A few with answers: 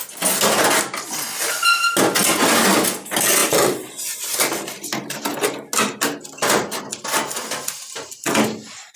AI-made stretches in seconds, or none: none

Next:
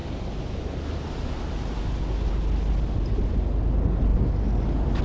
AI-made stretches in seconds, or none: none

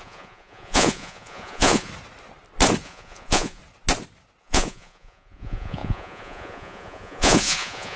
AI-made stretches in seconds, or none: 0.0-1.9 (vocoder, Vocos); 2.8-3.6; 4.4-8.0

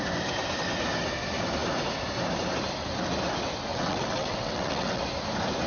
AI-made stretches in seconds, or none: 3.7-5.0 (vocoder, WaveNeXt)

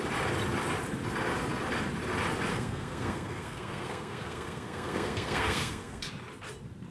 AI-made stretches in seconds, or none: 2.5-6.1 (codec, SNAC)

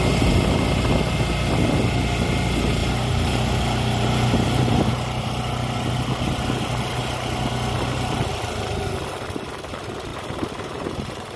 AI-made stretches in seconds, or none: 2.8-4.8 (vocoder, BigVGAN v2); 10.1-11.4

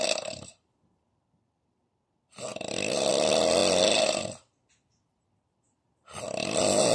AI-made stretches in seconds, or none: 0.0-6.9 (vocoder, BigVGAN v2)

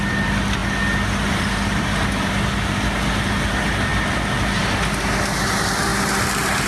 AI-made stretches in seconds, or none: none